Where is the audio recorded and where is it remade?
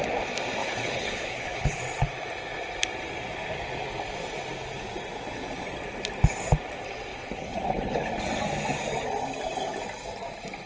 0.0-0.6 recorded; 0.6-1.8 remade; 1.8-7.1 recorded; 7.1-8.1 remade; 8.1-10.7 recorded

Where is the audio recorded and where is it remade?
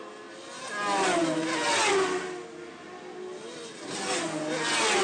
0.0-5.0 recorded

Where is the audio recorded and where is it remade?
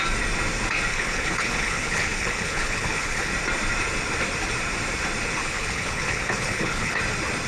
0.0-0.9 recorded; 0.9-3.3 remade; 3.3-5.4 recorded; 5.4-7.0 remade; 7.0-7.5 recorded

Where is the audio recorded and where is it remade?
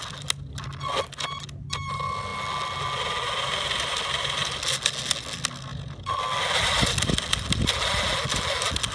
0.0-8.9 recorded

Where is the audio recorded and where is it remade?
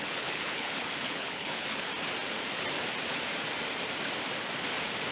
0.0-1.9 remade; 1.9-5.1 recorded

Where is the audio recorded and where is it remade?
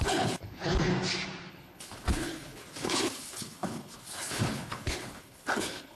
0.0-0.9 remade; 0.9-1.5 recorded; 1.5-5.9 remade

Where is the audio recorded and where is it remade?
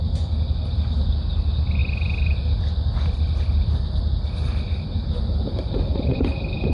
0.0-6.7 recorded